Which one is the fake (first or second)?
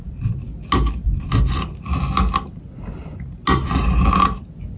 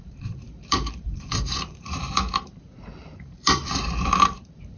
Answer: second